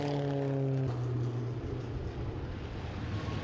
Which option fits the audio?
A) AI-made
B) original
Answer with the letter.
B